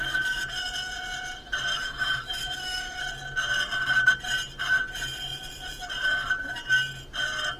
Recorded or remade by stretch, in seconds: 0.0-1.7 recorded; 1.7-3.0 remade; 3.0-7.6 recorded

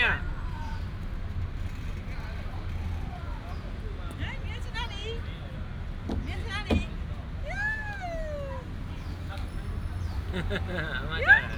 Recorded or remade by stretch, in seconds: 0.0-11.6 recorded

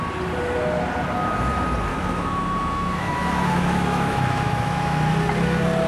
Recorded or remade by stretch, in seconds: 0.0-1.9 recorded; 1.9-5.1 remade; 5.1-5.9 recorded

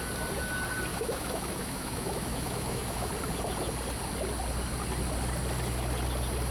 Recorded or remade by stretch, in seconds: 0.0-0.9 recorded; 0.9-3.1 remade; 3.1-6.5 recorded

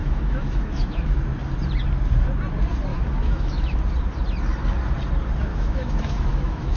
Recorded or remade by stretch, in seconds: 0.0-1.2 remade; 1.2-2.9 recorded; 2.9-3.8 remade; 3.8-5.5 recorded; 5.5-6.8 remade

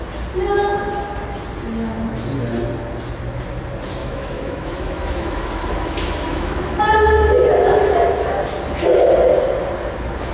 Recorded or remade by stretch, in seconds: 0.0-4.0 recorded; 4.0-6.8 remade; 6.8-10.3 recorded

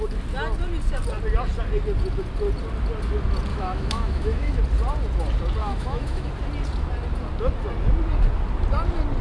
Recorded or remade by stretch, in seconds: 0.0-3.5 recorded; 3.5-4.6 remade; 4.6-5.6 recorded; 5.6-6.3 remade; 6.3-9.2 recorded